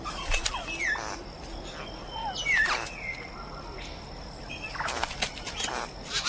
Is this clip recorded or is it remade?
recorded